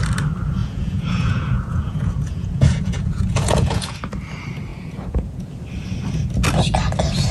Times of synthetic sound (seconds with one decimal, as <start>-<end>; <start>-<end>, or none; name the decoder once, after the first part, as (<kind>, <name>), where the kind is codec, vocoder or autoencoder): 0.6-4.0 (vocoder, Vocos); 4.7-5.5